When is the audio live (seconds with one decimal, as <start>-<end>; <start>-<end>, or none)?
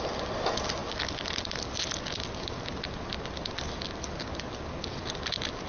0.0-5.7